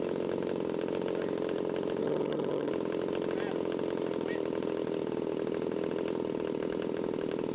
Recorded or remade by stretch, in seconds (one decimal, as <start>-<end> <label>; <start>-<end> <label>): 0.0-2.0 recorded; 2.0-2.7 remade; 2.7-7.5 recorded

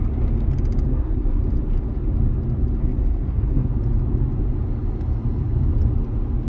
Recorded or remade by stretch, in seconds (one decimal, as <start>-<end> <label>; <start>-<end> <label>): 0.0-0.9 recorded; 0.9-1.4 remade; 1.4-2.8 recorded; 2.8-3.7 remade; 3.7-6.5 recorded

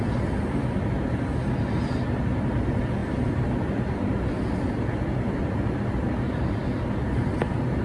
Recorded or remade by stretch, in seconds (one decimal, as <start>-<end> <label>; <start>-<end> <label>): 0.0-7.8 recorded

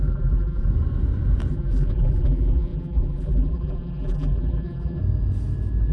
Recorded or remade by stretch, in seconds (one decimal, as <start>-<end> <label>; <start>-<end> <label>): 0.0-0.7 remade; 0.7-1.5 recorded; 1.5-5.0 remade; 5.0-5.9 recorded

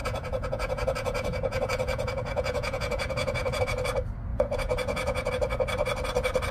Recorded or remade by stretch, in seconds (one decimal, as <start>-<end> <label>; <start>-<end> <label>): 0.0-3.6 remade; 3.6-4.3 recorded; 4.3-5.3 remade; 5.3-6.5 recorded

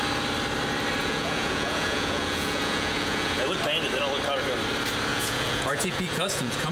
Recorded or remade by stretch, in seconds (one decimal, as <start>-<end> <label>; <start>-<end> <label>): 0.0-1.0 recorded; 1.0-3.6 remade; 3.6-5.1 recorded; 5.1-6.7 remade

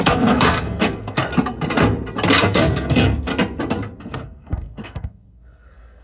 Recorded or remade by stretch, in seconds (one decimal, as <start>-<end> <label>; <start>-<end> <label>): 0.0-1.3 remade; 1.3-2.4 recorded; 2.4-3.3 remade; 3.3-4.0 recorded; 4.0-6.0 remade

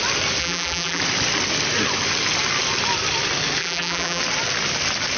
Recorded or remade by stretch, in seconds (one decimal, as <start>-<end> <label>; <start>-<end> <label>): 0.0-0.4 recorded; 0.4-1.0 remade; 1.0-3.6 recorded; 3.6-4.2 remade; 4.2-5.2 recorded